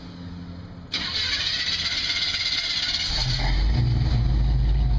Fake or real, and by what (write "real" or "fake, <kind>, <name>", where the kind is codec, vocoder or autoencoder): real